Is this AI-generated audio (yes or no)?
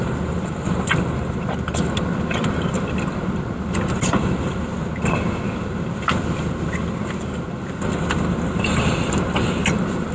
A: no